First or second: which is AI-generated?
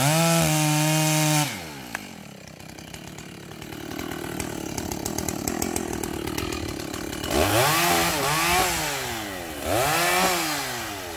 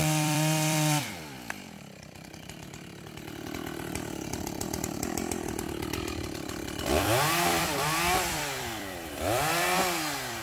second